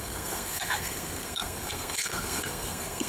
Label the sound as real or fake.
fake